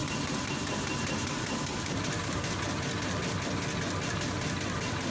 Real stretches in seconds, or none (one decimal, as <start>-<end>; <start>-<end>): 2.6-5.1